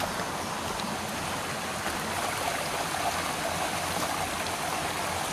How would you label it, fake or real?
real